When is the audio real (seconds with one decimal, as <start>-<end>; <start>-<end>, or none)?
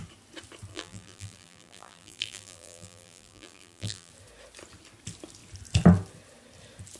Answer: 0.0-0.7; 4.1-7.0